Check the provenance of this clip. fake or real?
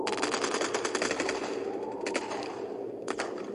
real